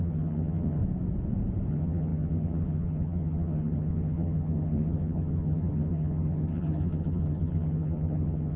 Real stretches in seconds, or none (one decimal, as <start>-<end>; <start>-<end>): 0.8-1.7

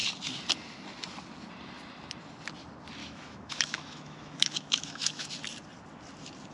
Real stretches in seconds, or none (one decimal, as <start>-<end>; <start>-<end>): 0.0-3.0; 5.3-6.5

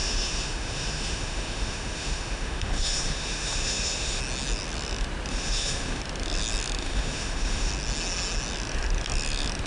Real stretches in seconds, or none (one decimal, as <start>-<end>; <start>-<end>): 4.2-5.3; 6.0-6.8; 7.7-9.7

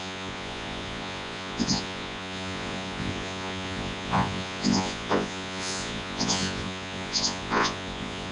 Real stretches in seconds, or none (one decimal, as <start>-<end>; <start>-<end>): none

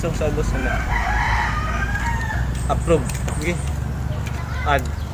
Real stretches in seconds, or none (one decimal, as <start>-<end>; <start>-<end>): 0.0-0.6; 3.7-5.1

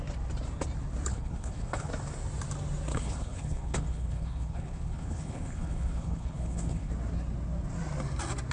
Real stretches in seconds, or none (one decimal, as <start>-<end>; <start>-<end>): 0.0-1.1; 1.9-2.9; 6.9-8.5

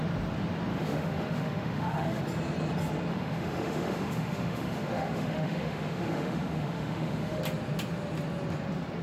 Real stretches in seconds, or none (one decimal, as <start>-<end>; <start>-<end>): 0.0-0.7; 2.2-3.1; 7.4-9.0

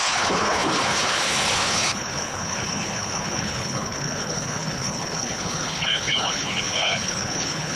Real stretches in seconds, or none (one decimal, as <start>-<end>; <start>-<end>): none